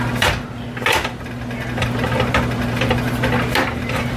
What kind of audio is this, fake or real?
real